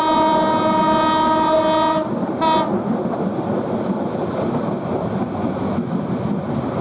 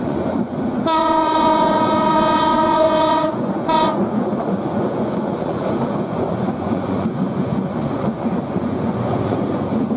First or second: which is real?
first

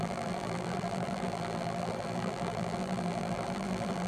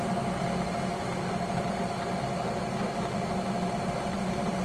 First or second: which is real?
second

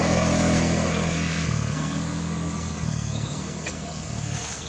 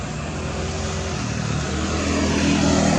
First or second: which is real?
second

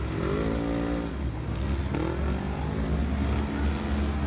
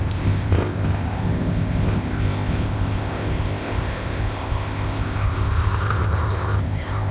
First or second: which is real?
first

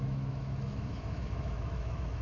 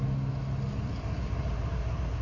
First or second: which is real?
second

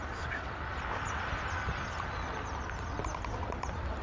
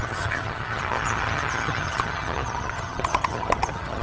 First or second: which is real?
first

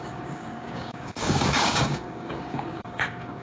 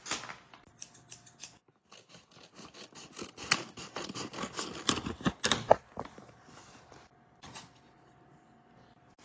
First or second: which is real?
second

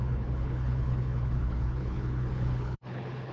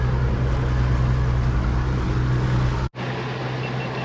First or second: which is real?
second